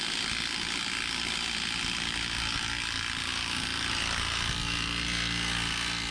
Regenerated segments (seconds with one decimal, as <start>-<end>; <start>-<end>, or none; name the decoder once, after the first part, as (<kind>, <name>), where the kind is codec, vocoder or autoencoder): none